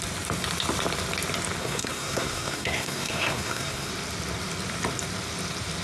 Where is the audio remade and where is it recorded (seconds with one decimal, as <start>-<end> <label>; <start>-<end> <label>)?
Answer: 0.0-1.6 recorded; 1.6-3.9 remade; 3.9-5.8 recorded